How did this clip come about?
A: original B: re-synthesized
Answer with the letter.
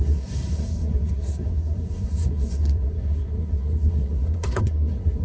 B